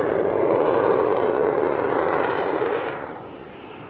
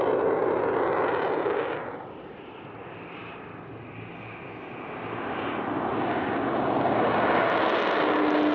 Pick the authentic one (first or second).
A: second